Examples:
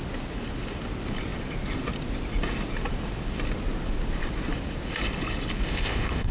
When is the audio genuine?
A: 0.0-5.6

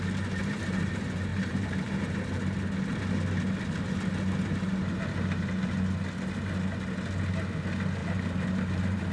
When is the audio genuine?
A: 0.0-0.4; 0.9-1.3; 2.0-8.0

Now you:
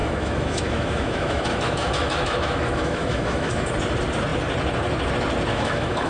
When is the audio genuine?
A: 3.7-5.5

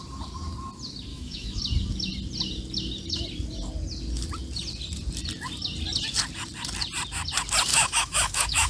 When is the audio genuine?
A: 0.0-1.1; 1.6-7.7